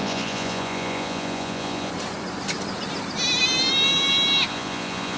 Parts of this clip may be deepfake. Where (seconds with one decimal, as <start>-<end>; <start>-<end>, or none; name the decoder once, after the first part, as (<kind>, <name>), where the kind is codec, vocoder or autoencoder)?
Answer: 0.0-1.9 (vocoder, Vocos); 4.5-5.2